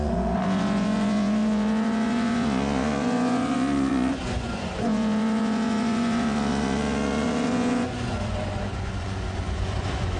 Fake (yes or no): yes